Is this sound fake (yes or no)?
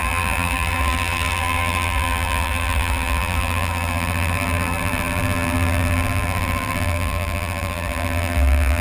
yes